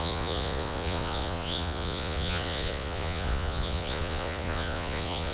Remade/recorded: remade